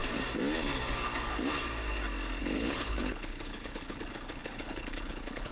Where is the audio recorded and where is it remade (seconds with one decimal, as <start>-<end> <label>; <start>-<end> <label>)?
0.0-2.4 recorded; 2.4-5.5 remade